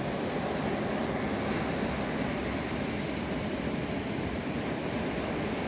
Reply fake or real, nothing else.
real